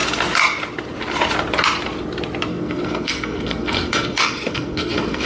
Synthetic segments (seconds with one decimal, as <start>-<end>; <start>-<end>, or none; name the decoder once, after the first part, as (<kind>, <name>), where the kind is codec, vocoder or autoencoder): 2.5-5.3 (codec, SNAC)